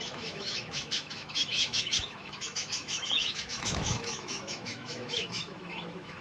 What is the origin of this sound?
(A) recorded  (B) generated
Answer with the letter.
B